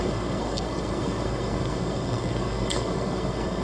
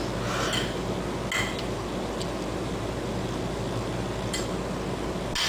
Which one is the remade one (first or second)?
first